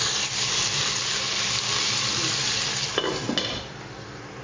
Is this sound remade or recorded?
recorded